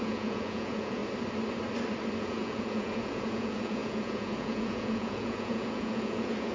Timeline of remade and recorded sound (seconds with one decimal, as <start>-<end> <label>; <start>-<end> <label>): 0.0-1.0 remade; 1.0-2.2 recorded; 2.2-6.5 remade

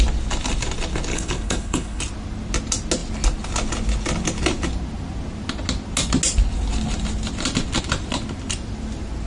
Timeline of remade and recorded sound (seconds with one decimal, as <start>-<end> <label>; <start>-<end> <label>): 0.0-1.1 recorded; 1.1-2.0 remade; 2.0-9.3 recorded

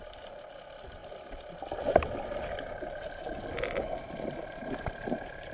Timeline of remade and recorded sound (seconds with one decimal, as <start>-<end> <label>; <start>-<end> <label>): 0.0-1.0 remade; 1.0-3.8 recorded; 3.8-5.5 remade

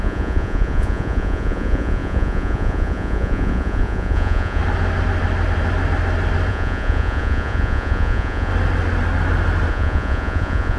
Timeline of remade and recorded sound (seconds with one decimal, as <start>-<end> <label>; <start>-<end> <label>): 0.0-4.6 remade; 4.6-6.5 recorded; 6.5-8.5 remade; 8.5-9.7 recorded; 9.7-10.8 remade